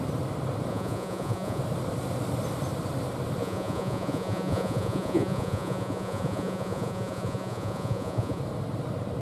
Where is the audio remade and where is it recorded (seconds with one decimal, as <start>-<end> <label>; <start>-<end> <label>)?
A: 0.0-0.7 recorded; 0.7-1.6 remade; 1.6-3.4 recorded; 3.4-8.4 remade; 8.4-9.2 recorded